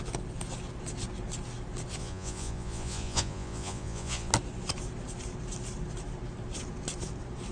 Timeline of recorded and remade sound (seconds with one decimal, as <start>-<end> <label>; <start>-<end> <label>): 0.0-2.0 recorded; 2.0-4.3 remade; 4.3-7.5 recorded